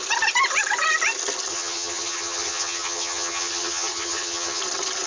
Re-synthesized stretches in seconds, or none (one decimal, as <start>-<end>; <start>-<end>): 1.5-4.6

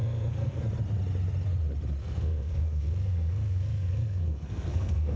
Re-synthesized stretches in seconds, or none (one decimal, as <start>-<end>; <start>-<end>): 0.0-0.6; 2.0-5.2

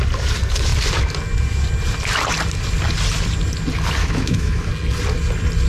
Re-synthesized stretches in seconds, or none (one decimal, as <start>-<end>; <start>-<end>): 4.0-4.7

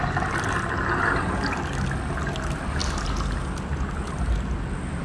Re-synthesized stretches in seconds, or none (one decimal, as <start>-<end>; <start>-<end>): none

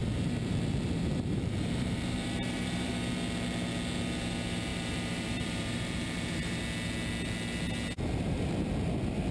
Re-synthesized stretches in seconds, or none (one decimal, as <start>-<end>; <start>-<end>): 0.0-2.9; 4.7-6.6

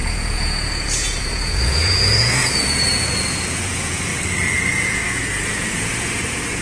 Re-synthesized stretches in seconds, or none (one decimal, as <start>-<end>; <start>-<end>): 0.0-4.1; 4.7-6.6

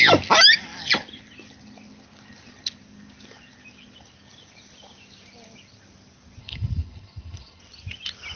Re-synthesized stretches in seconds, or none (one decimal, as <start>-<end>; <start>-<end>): 6.4-7.6

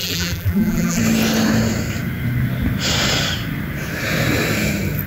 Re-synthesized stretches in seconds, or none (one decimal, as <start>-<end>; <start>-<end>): 0.0-1.0